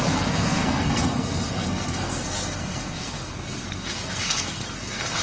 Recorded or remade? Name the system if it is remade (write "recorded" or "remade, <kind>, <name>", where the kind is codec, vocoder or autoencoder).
remade, codec, SNAC